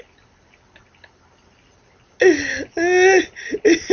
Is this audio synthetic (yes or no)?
no